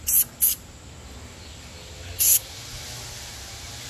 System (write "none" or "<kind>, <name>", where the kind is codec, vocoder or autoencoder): none